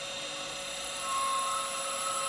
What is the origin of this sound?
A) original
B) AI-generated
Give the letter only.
A